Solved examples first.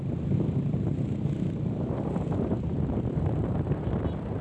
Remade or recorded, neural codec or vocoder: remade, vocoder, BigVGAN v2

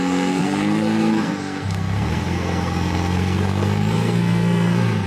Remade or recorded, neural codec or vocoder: remade, codec, SNAC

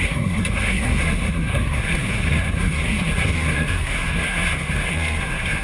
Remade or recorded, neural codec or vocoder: remade, codec, SNAC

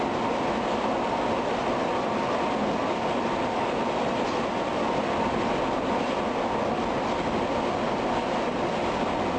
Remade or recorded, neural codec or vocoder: recorded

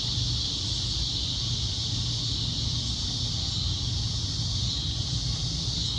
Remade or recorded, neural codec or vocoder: recorded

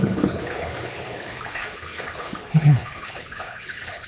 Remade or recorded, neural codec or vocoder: remade, codec, HILCodec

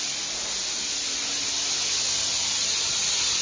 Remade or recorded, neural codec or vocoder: recorded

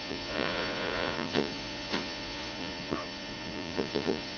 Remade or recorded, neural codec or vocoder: remade, vocoder, Vocos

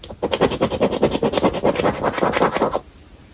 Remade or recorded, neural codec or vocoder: recorded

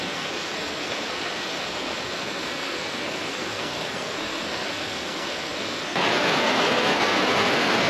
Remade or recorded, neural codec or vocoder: remade, codec, SNAC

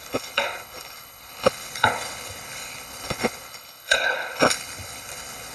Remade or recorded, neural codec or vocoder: remade, codec, HILCodec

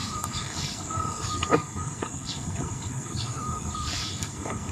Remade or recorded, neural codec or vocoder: remade, codec, SNAC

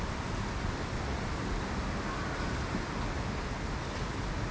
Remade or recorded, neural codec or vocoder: recorded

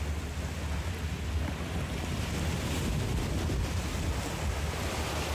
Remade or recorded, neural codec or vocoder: recorded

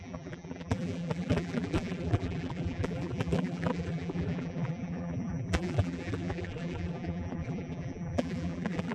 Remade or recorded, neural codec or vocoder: remade, vocoder, BigVGAN v2